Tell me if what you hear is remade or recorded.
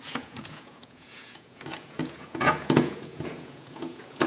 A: remade